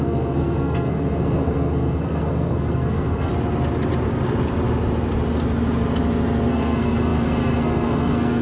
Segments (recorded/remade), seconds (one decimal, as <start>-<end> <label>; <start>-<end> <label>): 0.0-3.3 remade; 3.3-6.5 recorded; 6.5-8.4 remade